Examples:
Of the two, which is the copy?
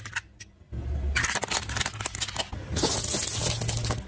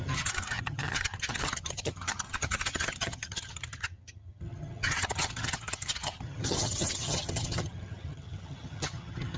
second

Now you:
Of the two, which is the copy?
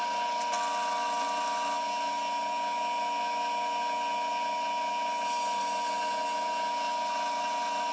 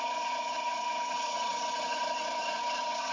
second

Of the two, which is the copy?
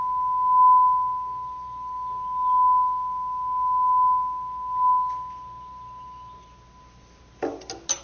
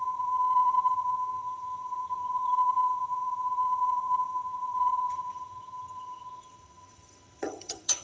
second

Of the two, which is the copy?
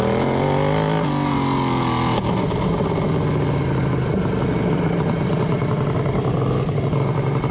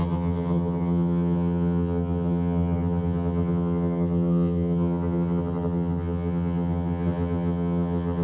second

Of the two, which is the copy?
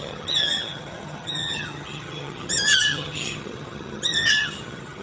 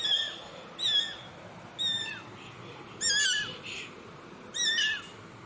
first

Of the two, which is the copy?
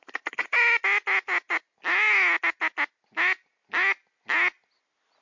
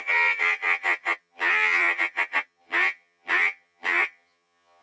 second